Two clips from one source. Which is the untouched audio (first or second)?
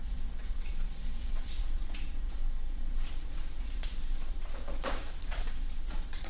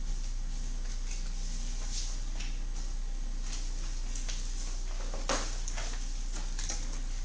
second